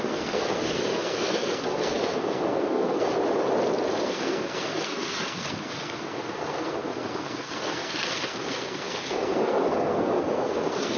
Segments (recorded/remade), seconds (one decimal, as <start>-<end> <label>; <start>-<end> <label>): 0.0-3.1 remade; 3.1-4.0 recorded; 4.0-11.0 remade